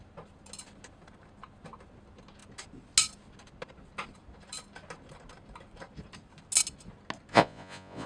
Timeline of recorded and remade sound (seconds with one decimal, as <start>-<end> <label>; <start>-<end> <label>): 0.0-7.3 recorded; 7.3-8.1 remade